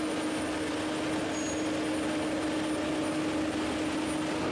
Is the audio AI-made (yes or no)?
no